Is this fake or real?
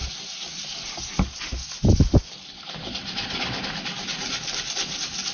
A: real